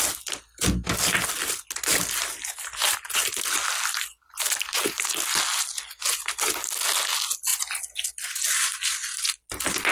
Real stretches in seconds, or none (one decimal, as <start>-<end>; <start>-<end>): 0.0-9.9